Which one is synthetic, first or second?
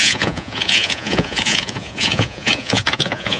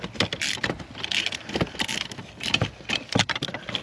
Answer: first